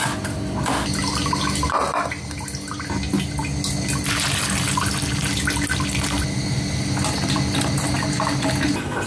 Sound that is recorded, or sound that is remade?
recorded